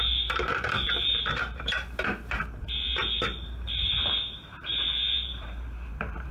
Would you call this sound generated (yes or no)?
yes